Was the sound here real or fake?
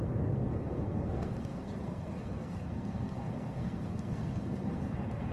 fake